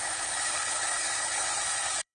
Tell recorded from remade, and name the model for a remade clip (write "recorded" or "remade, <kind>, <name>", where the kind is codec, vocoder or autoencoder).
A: remade, codec, HILCodec